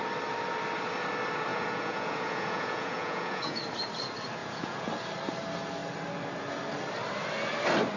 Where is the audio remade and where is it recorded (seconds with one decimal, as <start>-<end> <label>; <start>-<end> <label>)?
0.0-1.5 recorded; 1.5-3.6 remade; 3.6-4.4 recorded; 4.4-4.9 remade; 4.9-8.0 recorded